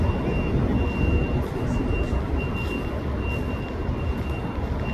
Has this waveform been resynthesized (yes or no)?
no